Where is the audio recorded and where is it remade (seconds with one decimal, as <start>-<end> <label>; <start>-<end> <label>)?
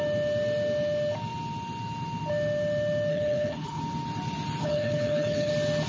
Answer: 0.0-3.1 recorded; 3.1-3.8 remade; 3.8-4.6 recorded; 4.6-5.5 remade; 5.5-5.9 recorded